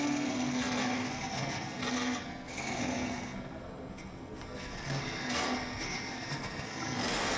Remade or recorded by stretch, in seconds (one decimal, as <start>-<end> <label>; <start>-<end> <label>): 0.0-7.4 remade